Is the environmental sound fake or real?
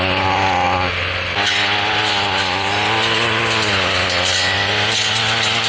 real